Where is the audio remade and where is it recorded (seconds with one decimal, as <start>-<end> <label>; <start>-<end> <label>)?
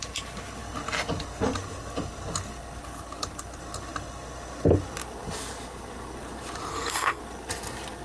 0.0-6.7 recorded; 6.7-7.2 remade; 7.2-8.0 recorded